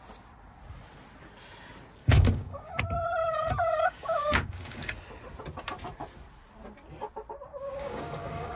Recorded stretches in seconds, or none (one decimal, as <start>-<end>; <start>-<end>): 0.0-2.0; 2.8-3.2; 5.0-7.5